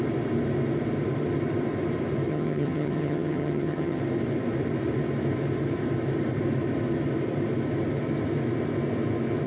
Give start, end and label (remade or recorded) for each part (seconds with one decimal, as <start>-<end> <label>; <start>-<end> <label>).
0.0-2.3 recorded; 2.3-4.0 remade; 4.0-9.5 recorded